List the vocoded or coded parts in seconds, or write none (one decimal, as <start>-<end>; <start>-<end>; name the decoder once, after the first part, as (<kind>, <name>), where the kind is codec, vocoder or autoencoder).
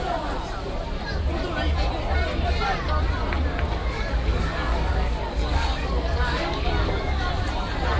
3.8-7.3 (codec, DAC)